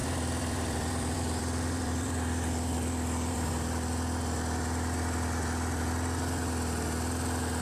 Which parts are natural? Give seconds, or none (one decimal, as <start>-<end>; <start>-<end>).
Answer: 3.5-7.6